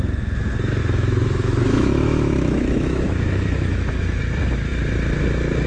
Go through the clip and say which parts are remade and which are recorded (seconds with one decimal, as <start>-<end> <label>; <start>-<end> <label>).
0.0-0.8 recorded; 0.8-4.2 remade; 4.2-5.7 recorded